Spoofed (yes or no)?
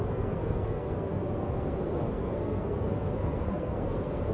yes